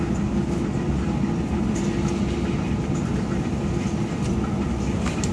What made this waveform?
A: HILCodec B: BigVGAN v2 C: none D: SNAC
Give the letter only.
C